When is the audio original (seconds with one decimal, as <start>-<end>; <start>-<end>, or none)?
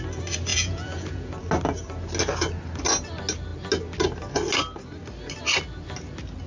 0.0-0.5; 1.3-6.5